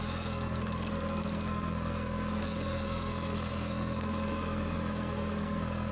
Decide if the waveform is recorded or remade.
remade